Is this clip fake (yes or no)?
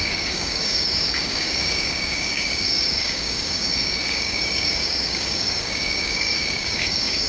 yes